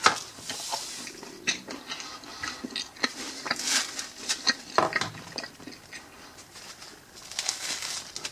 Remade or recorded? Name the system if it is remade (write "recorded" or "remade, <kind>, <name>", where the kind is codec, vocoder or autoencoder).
recorded